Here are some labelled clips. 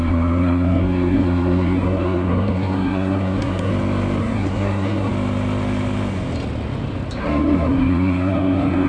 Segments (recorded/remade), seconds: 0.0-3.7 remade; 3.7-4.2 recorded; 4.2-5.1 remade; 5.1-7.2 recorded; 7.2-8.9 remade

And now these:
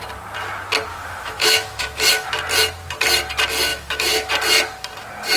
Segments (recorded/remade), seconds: 0.0-0.9 recorded; 0.9-2.3 remade; 2.3-3.7 recorded; 3.7-4.3 remade; 4.3-5.4 recorded

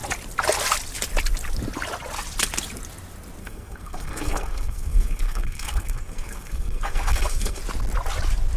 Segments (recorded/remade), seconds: 0.0-3.4 recorded; 3.4-7.6 remade; 7.6-8.6 recorded

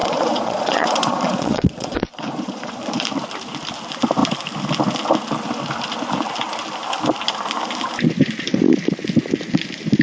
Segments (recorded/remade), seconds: 0.0-2.7 remade; 2.7-10.0 recorded

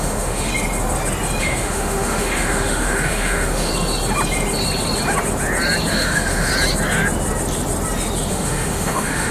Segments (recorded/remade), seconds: 0.0-0.5 remade; 0.5-1.4 recorded; 1.4-3.7 remade; 3.7-5.9 recorded; 5.9-6.5 remade; 6.5-8.3 recorded; 8.3-9.3 remade

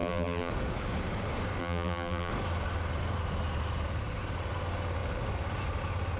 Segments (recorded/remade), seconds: 0.0-0.5 remade; 0.5-1.6 recorded; 1.6-2.3 remade; 2.3-6.2 recorded

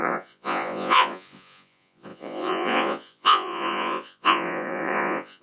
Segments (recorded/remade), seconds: 0.0-5.4 remade